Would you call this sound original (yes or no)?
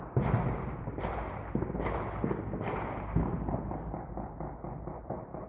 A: yes